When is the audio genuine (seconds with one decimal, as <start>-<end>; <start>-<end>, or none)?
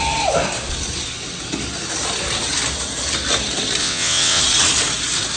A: 0.0-3.8; 4.4-5.4